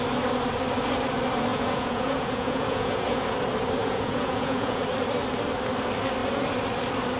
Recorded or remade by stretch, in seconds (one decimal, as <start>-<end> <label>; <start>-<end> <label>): 0.0-1.5 recorded; 1.5-3.2 remade; 3.2-3.8 recorded; 3.8-4.8 remade; 4.8-7.2 recorded